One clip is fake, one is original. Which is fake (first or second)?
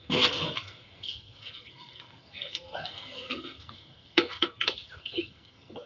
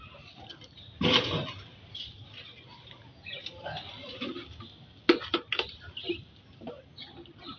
first